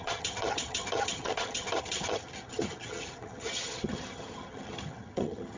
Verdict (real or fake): fake